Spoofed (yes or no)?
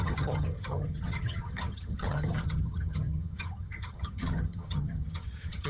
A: yes